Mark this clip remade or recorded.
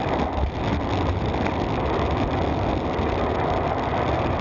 recorded